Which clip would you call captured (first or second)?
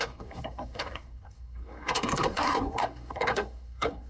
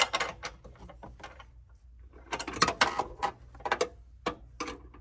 second